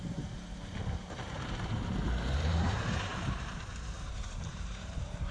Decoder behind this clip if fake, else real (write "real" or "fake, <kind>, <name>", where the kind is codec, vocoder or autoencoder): fake, vocoder, BigVGAN v2